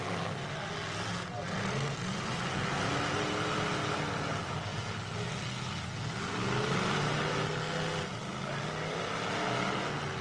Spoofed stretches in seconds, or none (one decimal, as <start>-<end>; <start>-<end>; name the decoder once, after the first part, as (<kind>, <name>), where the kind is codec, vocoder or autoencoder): none